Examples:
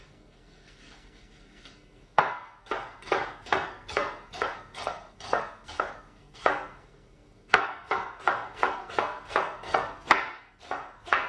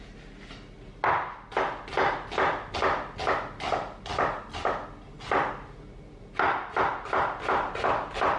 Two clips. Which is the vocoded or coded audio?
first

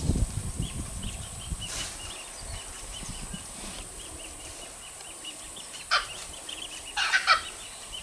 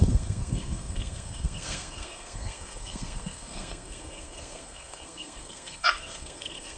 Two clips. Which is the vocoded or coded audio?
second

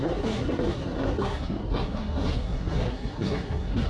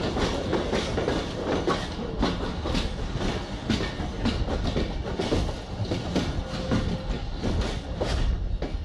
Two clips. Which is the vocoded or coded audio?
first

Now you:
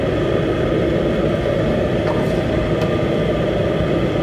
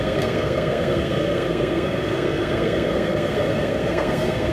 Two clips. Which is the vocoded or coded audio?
second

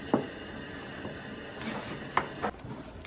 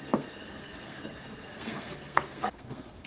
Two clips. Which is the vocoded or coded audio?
second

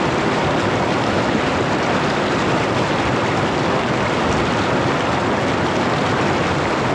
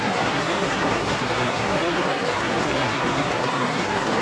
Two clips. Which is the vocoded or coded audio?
second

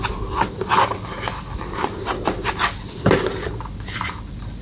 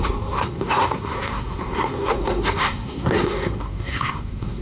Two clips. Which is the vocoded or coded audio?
second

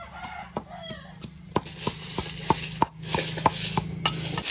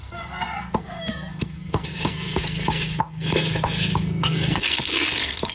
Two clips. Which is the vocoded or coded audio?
second